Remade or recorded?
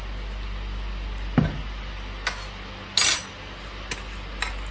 recorded